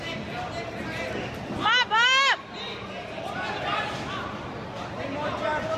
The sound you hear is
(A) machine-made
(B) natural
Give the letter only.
B